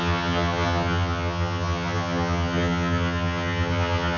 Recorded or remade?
remade